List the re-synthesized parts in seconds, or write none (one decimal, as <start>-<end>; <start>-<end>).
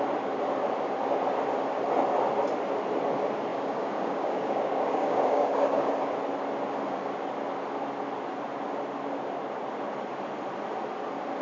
3.5-5.9